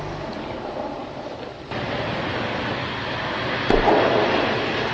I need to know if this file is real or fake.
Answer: real